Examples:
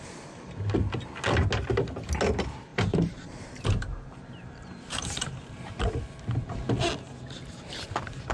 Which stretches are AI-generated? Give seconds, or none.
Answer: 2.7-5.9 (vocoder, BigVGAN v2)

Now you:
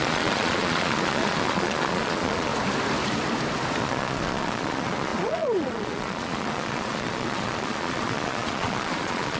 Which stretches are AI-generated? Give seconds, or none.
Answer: 0.0-2.5 (vocoder, Vocos); 3.8-9.4

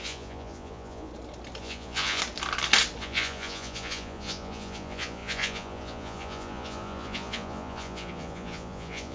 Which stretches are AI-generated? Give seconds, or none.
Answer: 0.0-1.1 (vocoder, Vocos); 1.6-2.2; 3.0-9.1

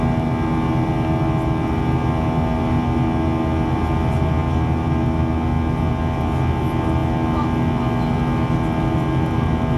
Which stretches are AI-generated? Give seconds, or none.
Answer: none